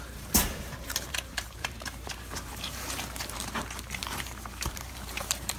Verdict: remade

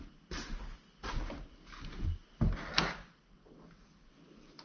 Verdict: recorded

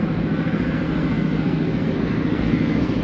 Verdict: remade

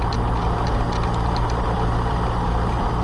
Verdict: recorded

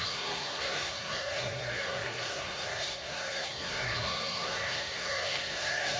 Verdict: remade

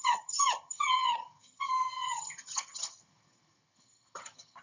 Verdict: remade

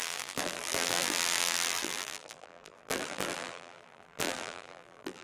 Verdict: remade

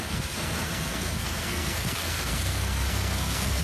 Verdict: remade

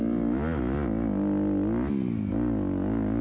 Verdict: recorded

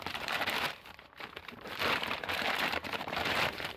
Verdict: remade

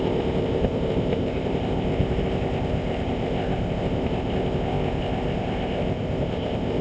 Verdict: remade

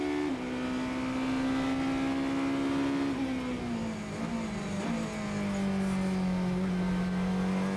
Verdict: recorded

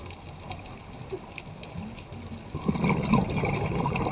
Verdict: recorded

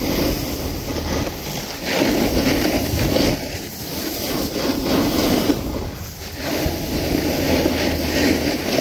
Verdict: recorded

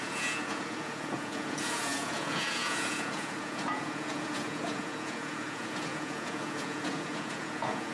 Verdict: remade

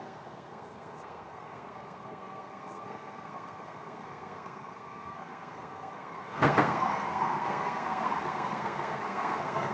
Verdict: remade